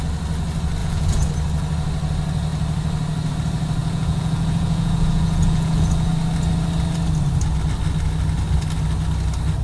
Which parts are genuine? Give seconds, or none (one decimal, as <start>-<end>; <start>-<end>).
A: 0.0-0.8; 1.3-3.8; 6.1-9.6